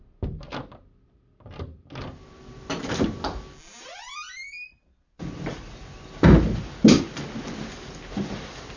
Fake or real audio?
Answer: real